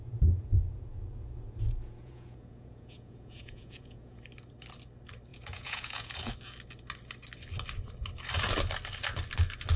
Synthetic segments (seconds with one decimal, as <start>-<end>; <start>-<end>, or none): 0.0-4.2; 5.3-6.3